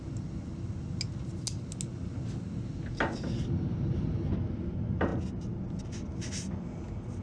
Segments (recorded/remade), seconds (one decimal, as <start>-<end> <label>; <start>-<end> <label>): 0.0-7.2 recorded